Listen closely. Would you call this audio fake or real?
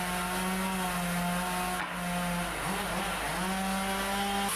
real